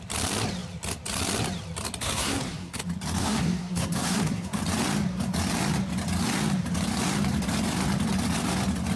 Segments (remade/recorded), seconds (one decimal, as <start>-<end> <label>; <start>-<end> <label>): 0.0-2.0 recorded; 2.0-2.8 remade; 2.8-3.2 recorded; 3.2-4.6 remade; 4.6-9.0 recorded